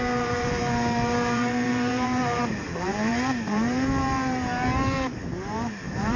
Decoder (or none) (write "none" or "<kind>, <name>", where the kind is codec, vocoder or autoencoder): vocoder, BigVGAN v2